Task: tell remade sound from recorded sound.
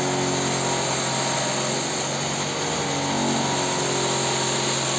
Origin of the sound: recorded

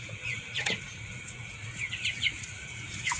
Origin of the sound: remade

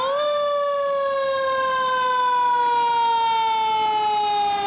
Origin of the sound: recorded